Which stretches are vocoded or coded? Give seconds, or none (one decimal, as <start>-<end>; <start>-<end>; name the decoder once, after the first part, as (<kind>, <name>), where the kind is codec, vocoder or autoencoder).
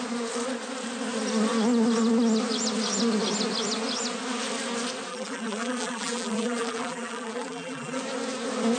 5.1-8.0 (vocoder, BigVGAN v2)